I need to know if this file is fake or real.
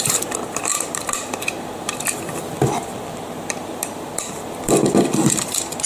real